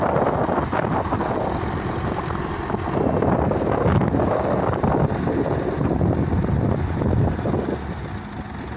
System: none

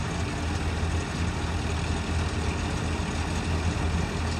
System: none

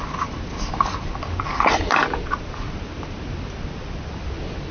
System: none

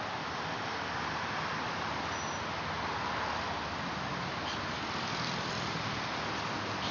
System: none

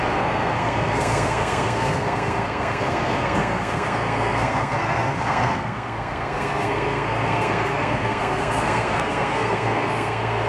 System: codec, SNAC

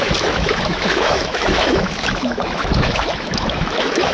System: autoencoder, DAC-VAE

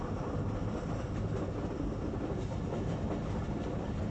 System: none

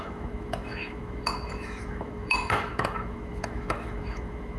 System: autoencoder, DAC-VAE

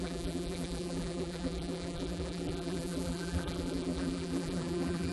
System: vocoder, BigVGAN v2